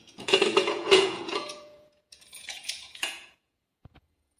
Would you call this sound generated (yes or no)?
yes